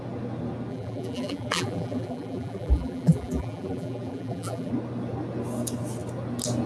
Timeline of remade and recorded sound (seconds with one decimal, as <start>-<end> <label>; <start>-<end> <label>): 0.0-0.7 recorded; 0.7-4.7 remade; 4.7-6.7 recorded